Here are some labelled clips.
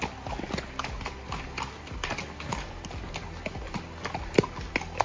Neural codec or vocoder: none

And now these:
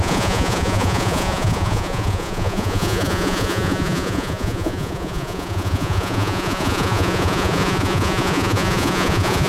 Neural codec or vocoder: vocoder, Vocos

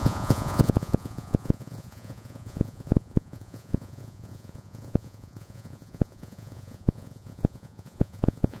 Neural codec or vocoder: vocoder, Vocos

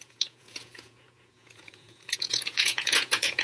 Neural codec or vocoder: vocoder, Vocos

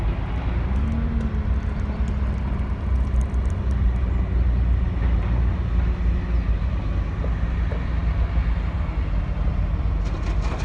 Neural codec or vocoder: none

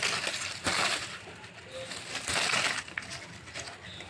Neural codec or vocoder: none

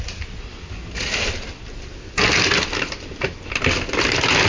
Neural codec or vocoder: none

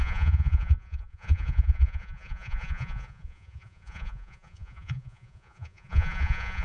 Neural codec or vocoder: vocoder, Vocos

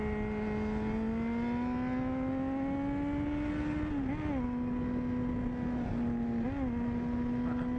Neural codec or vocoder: none